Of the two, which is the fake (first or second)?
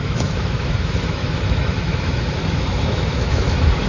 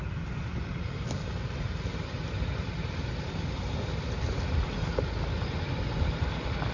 first